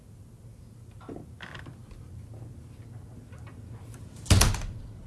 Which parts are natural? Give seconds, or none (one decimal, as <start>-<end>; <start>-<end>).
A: 0.0-5.1